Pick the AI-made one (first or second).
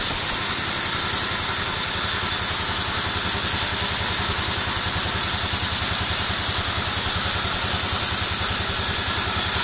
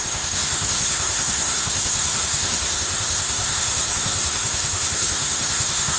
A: second